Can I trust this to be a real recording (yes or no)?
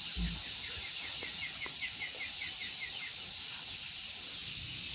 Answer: yes